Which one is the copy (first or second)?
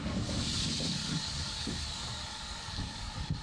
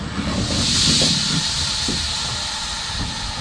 first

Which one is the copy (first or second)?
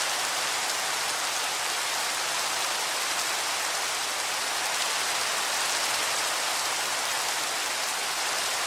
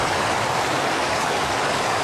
second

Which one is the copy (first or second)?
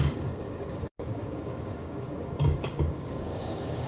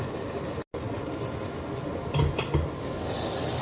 first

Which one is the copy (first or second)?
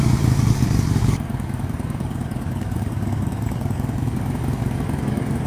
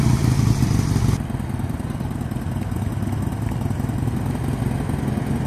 first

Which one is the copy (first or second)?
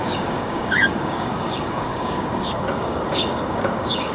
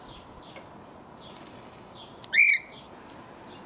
first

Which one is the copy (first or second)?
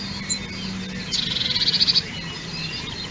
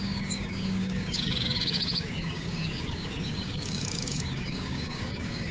second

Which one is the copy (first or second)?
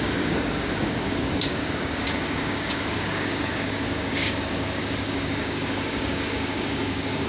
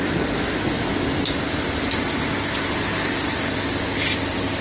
first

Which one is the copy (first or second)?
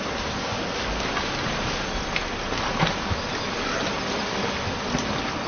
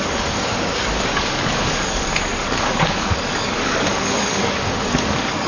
second